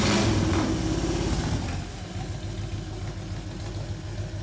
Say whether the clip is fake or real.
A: real